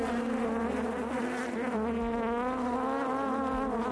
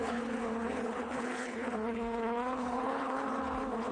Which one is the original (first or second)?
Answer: first